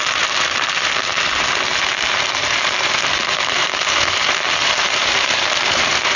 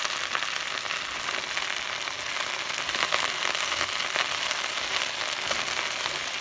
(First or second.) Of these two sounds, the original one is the second